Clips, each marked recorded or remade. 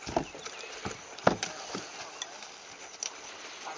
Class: recorded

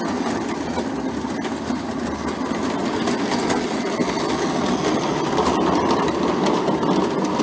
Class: recorded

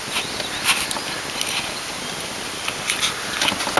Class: recorded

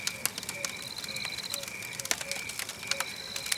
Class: recorded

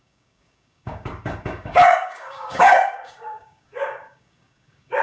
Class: remade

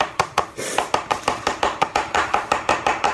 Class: remade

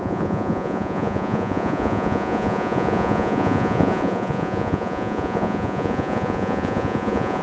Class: remade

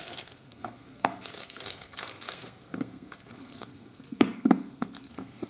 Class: remade